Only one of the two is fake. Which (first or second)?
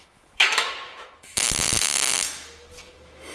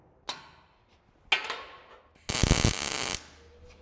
first